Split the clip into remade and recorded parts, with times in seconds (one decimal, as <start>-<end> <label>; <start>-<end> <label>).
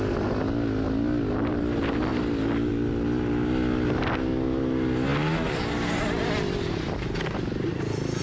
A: 0.0-8.2 recorded